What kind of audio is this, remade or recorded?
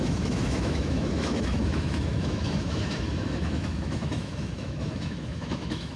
remade